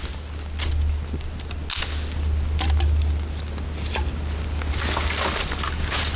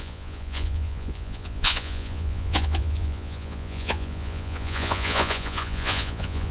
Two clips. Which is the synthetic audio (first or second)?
second